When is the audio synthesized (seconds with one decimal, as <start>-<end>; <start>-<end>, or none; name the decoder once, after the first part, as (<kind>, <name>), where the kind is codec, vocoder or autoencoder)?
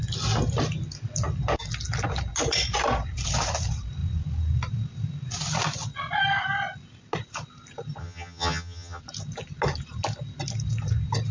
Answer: 8.0-9.0 (vocoder, HiFi-GAN)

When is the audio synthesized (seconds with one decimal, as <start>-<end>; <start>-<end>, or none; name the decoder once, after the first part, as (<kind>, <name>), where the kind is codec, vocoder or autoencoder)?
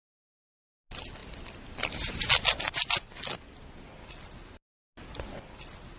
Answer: none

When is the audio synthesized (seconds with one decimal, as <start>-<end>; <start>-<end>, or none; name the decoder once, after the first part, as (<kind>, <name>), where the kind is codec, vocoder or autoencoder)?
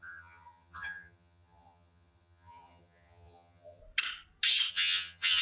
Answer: 0.0-3.8 (vocoder, HiFi-GAN); 4.7-5.4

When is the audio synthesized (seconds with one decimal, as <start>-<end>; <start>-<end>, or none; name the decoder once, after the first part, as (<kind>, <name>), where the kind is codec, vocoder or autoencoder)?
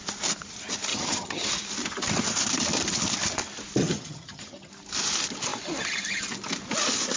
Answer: 0.9-1.5 (vocoder, HiFi-GAN); 3.8-4.7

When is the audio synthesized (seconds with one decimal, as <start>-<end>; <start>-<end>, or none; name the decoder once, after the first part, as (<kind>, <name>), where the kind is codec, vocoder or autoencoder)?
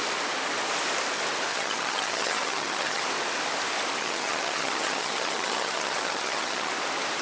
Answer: 1.5-3.0 (vocoder, HiFi-GAN); 4.0-6.7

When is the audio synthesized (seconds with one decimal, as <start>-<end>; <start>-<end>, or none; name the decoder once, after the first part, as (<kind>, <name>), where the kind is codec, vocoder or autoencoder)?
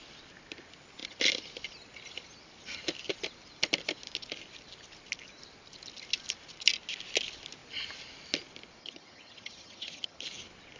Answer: 8.8-10.2 (vocoder, HiFi-GAN)